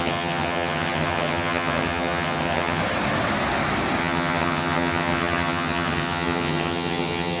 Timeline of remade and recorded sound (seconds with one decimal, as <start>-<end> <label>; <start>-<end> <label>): 0.0-2.8 remade; 2.8-4.0 recorded; 4.0-7.4 remade